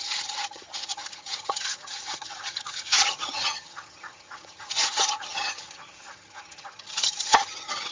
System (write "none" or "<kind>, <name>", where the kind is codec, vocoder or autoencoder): vocoder, HiFi-GAN